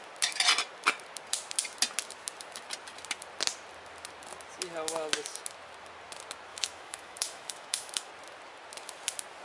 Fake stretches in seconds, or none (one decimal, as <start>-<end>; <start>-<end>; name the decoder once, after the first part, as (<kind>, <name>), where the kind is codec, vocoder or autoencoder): 6.5-8.1 (autoencoder, DAC-VAE)